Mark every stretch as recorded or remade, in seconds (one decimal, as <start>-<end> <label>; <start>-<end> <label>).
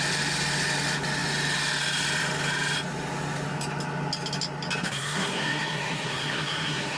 0.0-4.8 recorded; 4.8-7.0 remade